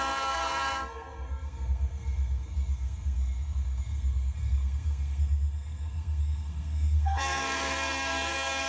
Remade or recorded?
remade